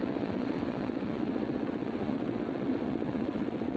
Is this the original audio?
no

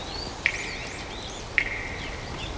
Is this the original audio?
yes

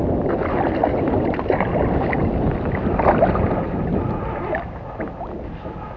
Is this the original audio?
yes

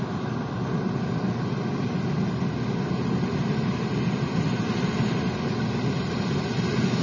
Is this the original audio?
yes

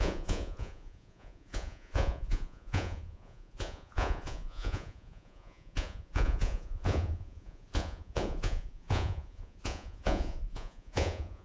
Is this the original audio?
no